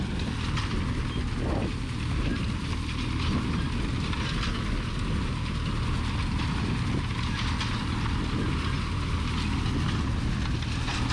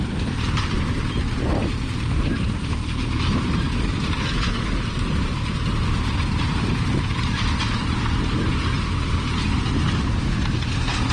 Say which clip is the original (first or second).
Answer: first